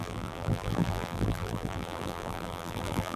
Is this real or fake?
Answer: fake